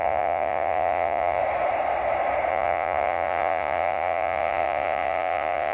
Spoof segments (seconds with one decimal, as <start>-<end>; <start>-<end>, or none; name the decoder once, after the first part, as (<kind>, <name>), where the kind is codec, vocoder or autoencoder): 0.0-1.4 (vocoder, Vocos); 2.5-5.7